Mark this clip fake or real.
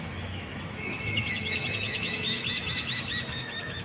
fake